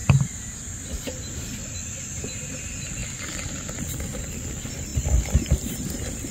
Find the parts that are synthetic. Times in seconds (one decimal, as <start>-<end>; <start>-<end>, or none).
none